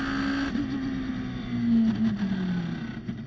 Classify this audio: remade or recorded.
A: recorded